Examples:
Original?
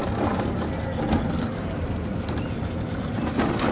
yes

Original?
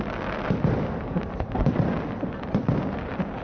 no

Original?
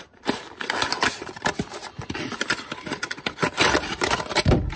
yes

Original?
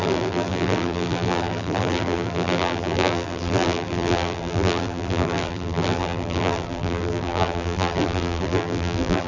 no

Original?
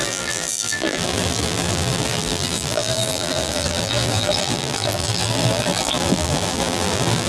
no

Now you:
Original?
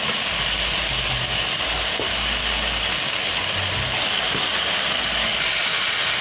yes